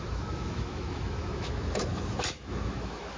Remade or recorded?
remade